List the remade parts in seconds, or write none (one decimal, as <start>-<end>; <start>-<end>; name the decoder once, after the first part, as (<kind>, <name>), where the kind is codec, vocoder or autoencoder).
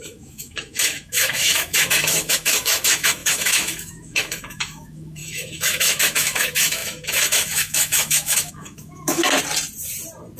0.0-9.2 (autoencoder, DAC-VAE)